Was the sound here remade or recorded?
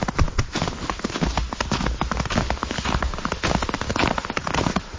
recorded